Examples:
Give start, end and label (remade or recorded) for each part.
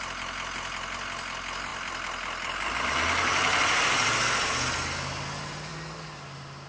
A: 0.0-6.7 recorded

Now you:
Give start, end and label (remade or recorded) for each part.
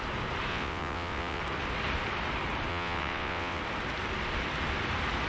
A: 0.0-0.5 recorded; 0.5-1.4 remade; 1.4-2.7 recorded; 2.7-3.6 remade; 3.6-5.3 recorded